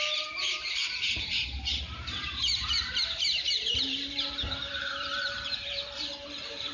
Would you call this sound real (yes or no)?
no